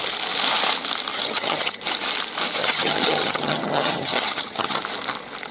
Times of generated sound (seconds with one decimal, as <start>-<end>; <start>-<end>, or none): 1.1-1.8; 2.6-4.8